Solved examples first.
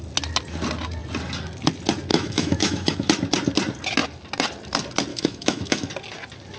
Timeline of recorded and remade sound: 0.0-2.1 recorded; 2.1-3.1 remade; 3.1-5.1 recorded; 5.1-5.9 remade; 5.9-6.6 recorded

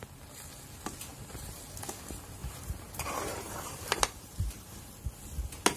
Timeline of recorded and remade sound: 0.0-1.1 recorded; 1.1-1.6 remade; 1.6-2.4 recorded; 2.4-4.8 remade; 4.8-5.8 recorded

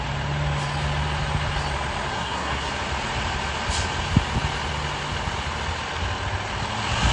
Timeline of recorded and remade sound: 0.0-2.1 recorded; 2.1-2.7 remade; 2.7-7.1 recorded

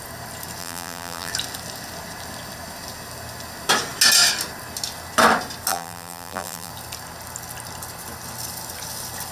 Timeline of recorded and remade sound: 0.0-0.6 recorded; 0.6-1.3 remade; 1.3-5.7 recorded; 5.7-6.7 remade; 6.7-9.3 recorded

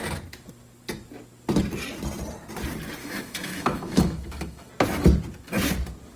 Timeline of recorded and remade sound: 0.0-3.0 recorded; 3.0-4.7 remade; 4.7-6.2 recorded

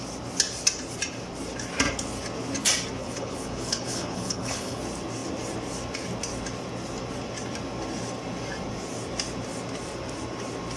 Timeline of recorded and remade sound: 0.0-3.0 recorded; 3.0-4.8 remade; 4.8-10.8 recorded

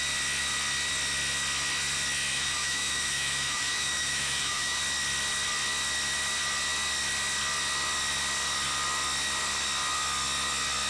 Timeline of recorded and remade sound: 0.0-2.3 recorded; 2.3-4.8 remade; 4.8-10.9 recorded